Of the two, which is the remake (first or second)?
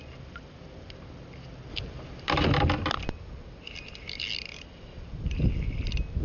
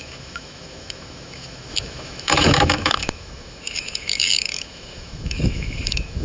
second